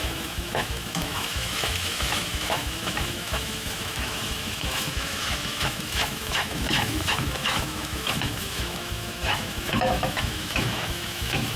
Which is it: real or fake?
fake